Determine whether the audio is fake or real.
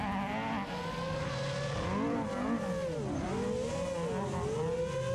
real